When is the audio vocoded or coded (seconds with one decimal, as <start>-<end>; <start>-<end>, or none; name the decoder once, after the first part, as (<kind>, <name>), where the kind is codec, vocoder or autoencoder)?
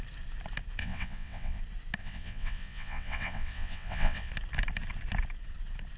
0.8-1.6 (vocoder, WaveNeXt); 2.0-4.3